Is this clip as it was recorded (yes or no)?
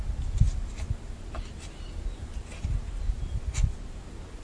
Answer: yes